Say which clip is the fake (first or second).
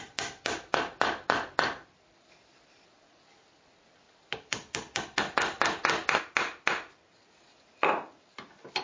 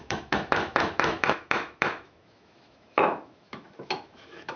second